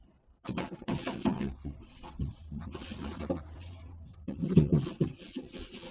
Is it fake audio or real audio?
fake